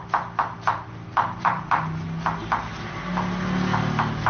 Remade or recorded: recorded